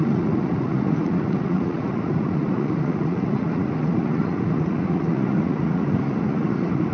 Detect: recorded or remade remade